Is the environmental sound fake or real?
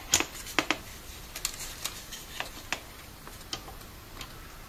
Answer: real